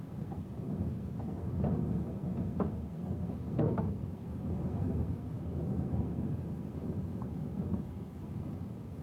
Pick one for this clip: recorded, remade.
remade